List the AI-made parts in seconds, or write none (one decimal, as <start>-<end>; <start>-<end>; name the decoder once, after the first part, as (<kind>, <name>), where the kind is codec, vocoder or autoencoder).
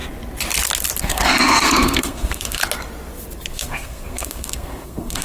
1.0-2.6 (codec, SNAC); 3.5-5.2